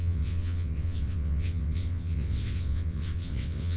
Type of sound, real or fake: fake